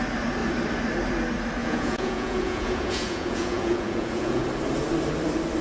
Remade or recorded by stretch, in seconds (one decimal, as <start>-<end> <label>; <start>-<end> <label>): 0.0-1.6 recorded; 1.6-4.4 remade; 4.4-5.6 recorded